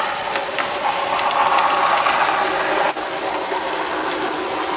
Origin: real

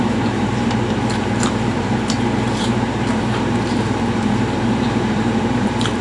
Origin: fake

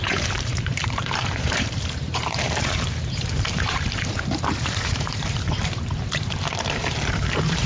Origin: fake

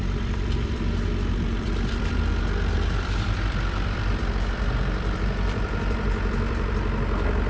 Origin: fake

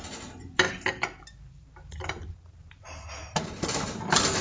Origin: fake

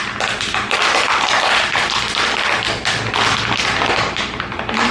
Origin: real